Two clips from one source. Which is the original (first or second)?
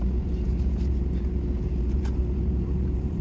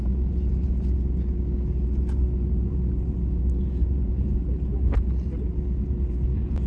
second